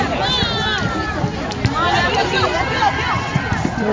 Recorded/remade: recorded